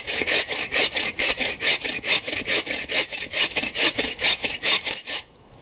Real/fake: fake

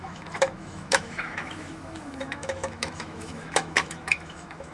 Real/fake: fake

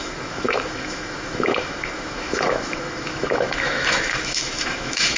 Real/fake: fake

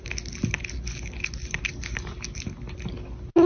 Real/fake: real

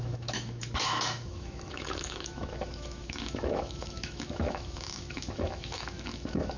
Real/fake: fake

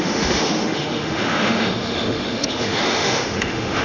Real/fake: fake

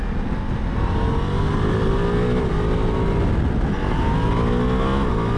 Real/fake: real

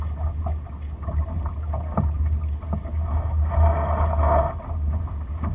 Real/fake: real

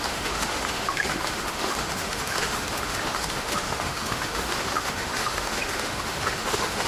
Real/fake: fake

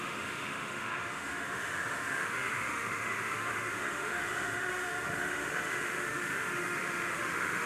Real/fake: fake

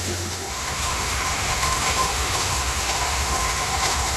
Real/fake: fake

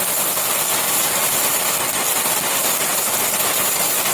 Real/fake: real